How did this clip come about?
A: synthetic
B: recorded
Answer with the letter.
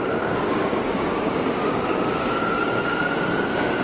A